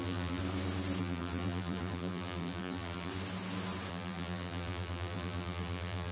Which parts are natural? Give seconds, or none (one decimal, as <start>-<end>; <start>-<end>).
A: 0.4-1.0; 3.1-3.9